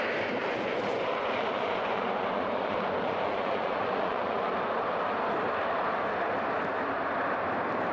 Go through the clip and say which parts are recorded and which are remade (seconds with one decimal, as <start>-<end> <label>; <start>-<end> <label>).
0.0-0.4 recorded; 0.4-4.5 remade; 4.5-7.9 recorded